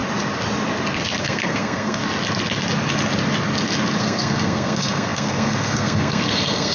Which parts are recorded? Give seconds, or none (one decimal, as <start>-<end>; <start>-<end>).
0.0-1.2; 2.0-4.0